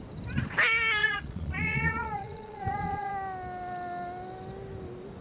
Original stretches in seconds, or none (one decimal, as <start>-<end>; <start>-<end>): 0.0-1.0; 3.1-5.2